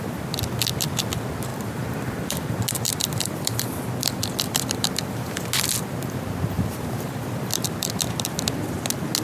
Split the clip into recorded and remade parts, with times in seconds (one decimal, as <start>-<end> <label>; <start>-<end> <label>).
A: 0.0-1.5 recorded; 1.5-5.8 remade; 5.8-9.2 recorded